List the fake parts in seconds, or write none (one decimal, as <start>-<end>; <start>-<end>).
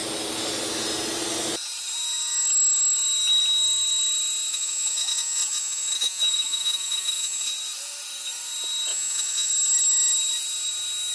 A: 4.5-7.5; 8.9-9.5